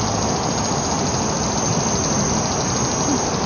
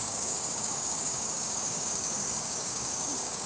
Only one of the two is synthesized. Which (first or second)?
second